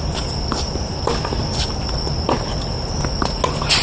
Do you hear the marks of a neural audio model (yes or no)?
no